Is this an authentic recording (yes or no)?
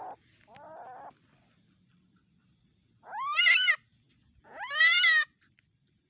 yes